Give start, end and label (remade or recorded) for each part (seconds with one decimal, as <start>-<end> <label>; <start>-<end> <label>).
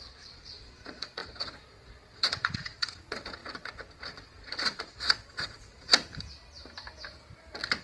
0.0-5.9 remade; 5.9-7.8 recorded